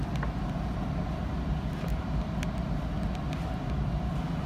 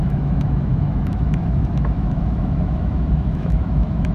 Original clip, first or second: first